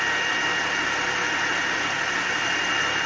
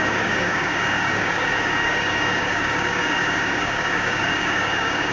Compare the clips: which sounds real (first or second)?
first